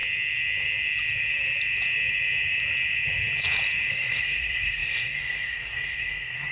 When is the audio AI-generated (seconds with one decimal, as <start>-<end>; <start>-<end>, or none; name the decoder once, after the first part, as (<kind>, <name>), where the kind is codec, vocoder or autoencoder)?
3.9-6.5 (codec, SNAC)